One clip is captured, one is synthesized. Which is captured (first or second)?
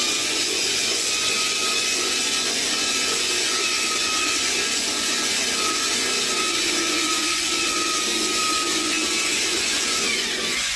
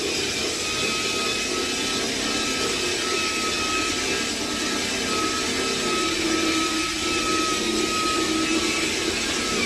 second